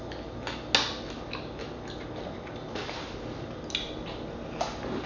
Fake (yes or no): no